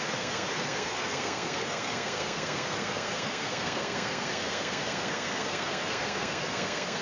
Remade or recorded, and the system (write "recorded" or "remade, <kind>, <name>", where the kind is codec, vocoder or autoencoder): remade, codec, SNAC